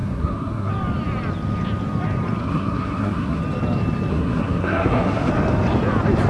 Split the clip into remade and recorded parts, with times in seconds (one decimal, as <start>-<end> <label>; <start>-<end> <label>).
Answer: 0.0-0.7 remade; 0.7-2.4 recorded; 2.4-3.4 remade; 3.4-4.1 recorded; 4.1-5.3 remade; 5.3-6.3 recorded